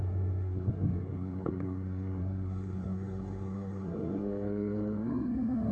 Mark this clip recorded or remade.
remade